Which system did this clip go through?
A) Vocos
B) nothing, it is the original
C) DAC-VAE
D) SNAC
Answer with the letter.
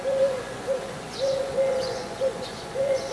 A